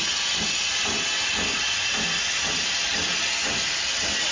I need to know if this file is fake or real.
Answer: real